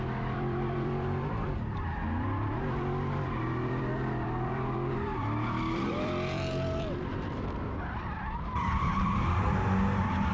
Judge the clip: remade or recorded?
remade